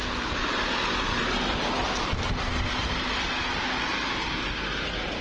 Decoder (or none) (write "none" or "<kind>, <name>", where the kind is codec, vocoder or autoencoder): none